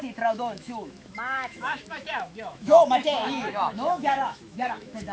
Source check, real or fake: fake